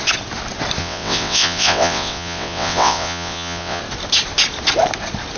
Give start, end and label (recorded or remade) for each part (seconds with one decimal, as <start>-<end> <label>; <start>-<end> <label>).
0.0-0.8 recorded; 0.8-3.8 remade; 3.8-5.4 recorded